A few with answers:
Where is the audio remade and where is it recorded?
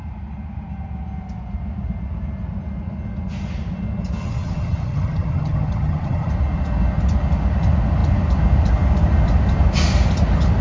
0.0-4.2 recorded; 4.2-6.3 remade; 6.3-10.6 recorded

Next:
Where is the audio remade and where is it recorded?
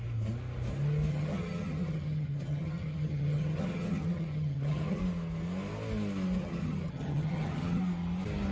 0.0-1.1 recorded; 1.1-5.0 remade; 5.0-6.4 recorded; 6.4-7.8 remade; 7.8-8.5 recorded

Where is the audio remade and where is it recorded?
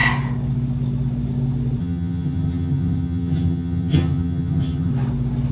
0.0-1.8 recorded; 1.8-4.9 remade; 4.9-5.5 recorded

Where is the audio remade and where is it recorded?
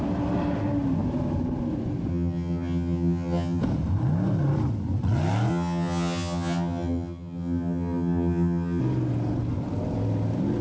0.0-2.1 recorded; 2.1-3.6 remade; 3.6-5.5 recorded; 5.5-8.8 remade; 8.8-10.6 recorded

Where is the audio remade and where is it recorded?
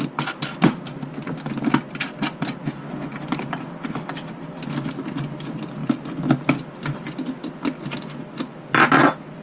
0.0-9.4 recorded